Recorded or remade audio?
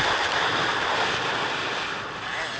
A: recorded